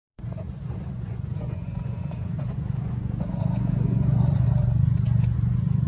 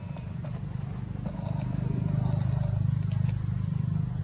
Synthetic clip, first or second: first